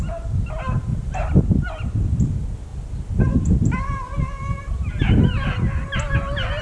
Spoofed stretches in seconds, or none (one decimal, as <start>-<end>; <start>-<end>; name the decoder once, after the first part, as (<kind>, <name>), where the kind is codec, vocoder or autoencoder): 0.9-1.4 (vocoder, BigVGAN v2); 2.7-5.0